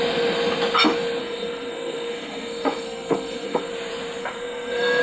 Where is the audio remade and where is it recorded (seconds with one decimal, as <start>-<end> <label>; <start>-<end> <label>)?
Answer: 0.0-1.2 recorded; 1.2-3.7 remade; 3.7-4.2 recorded; 4.2-5.0 remade